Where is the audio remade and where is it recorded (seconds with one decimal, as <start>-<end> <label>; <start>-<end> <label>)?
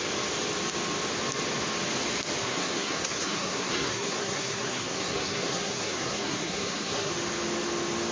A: 0.0-2.4 recorded; 2.4-7.1 remade; 7.1-8.1 recorded